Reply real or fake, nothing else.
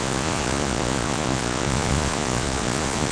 fake